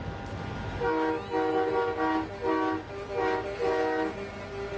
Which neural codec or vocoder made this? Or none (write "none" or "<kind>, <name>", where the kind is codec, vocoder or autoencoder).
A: none